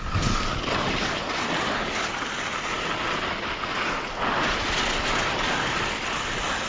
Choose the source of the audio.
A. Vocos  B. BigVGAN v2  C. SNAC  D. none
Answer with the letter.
D